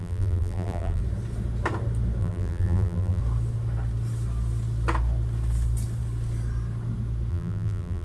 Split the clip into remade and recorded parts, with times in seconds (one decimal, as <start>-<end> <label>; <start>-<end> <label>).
0.0-1.0 remade; 1.0-2.2 recorded; 2.2-3.2 remade; 3.2-7.3 recorded; 7.3-8.0 remade